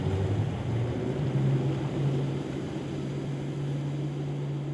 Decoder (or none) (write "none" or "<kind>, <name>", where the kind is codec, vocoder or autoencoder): none